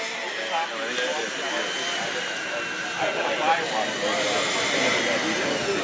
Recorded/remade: recorded